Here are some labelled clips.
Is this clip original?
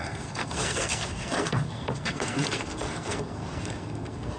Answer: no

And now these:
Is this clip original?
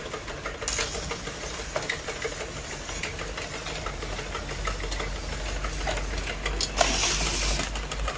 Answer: yes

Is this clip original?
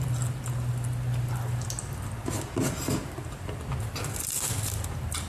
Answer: yes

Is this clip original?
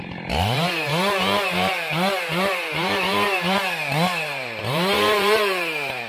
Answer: no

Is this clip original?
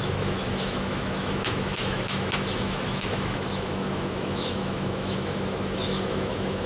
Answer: no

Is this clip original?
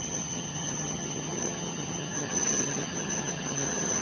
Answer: no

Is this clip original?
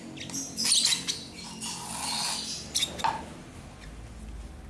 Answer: yes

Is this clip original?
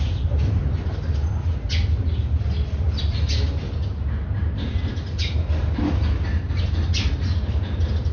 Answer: yes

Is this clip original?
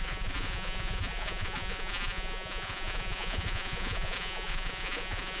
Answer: no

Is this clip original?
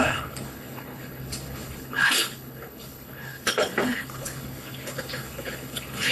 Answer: no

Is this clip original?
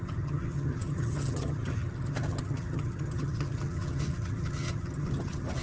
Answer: no